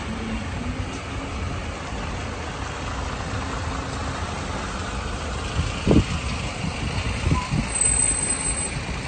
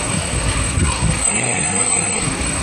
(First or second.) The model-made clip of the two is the second